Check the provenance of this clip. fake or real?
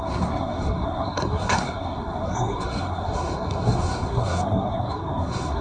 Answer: fake